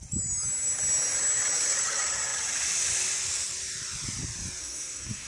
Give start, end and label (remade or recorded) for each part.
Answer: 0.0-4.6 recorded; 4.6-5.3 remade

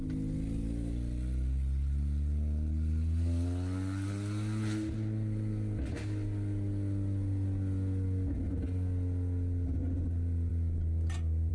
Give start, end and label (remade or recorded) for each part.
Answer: 0.0-11.5 recorded

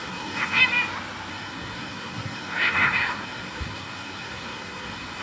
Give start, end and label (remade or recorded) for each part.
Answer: 0.0-0.6 remade; 0.6-1.3 recorded; 1.3-5.2 remade

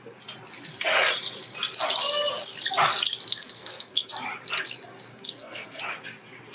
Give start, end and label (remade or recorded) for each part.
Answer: 0.0-3.3 recorded; 3.3-4.1 remade; 4.1-5.1 recorded; 5.1-5.8 remade; 5.8-6.5 recorded

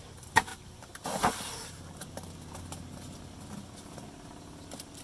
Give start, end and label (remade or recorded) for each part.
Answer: 0.0-5.0 recorded